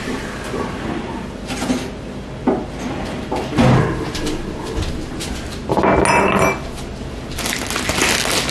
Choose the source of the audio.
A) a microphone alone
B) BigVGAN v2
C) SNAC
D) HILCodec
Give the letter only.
A